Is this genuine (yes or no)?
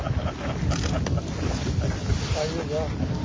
yes